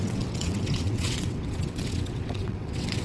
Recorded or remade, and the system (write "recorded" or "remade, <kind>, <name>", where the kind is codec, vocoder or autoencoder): remade, vocoder, WaveNeXt